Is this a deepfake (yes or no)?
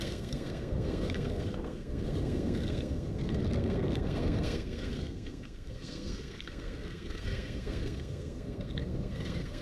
yes